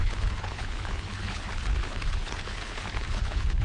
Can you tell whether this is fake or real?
fake